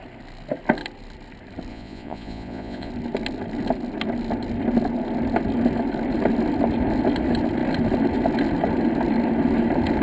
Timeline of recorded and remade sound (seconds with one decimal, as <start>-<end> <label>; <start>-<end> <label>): 0.0-1.7 recorded; 1.7-2.9 remade; 2.9-10.0 recorded